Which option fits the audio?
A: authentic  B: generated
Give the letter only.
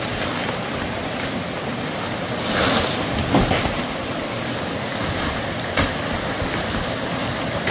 A